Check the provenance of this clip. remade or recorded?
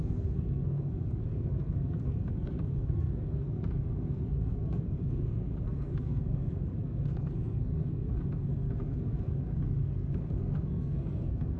remade